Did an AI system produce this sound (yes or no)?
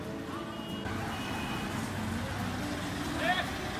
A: no